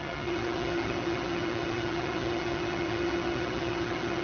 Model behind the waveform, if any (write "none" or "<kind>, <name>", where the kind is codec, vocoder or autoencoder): vocoder, HiFi-GAN